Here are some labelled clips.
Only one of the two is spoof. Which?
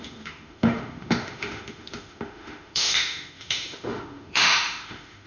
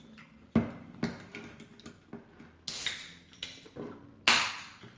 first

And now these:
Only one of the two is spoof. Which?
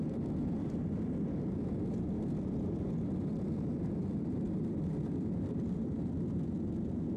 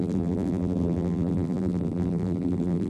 second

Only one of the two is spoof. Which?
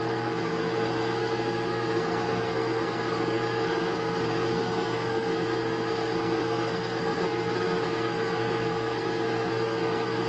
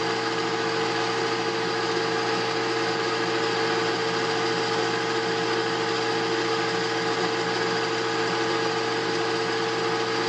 first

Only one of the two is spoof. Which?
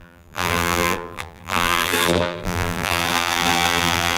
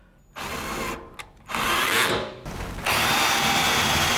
first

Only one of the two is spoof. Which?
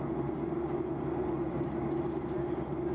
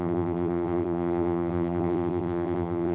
second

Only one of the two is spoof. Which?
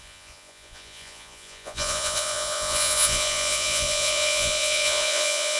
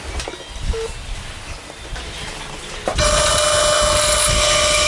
first